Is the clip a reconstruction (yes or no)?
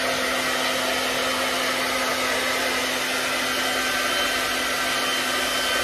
no